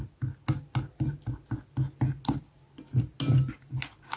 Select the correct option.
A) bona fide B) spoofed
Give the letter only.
A